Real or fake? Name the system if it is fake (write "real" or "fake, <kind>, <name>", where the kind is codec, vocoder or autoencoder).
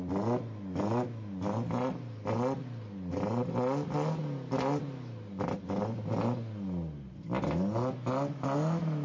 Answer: real